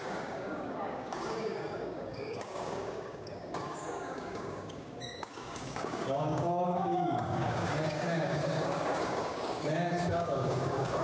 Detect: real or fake fake